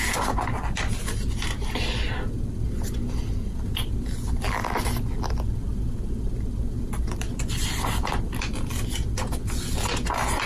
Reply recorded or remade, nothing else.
recorded